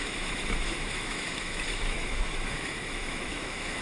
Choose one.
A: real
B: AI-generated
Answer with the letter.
B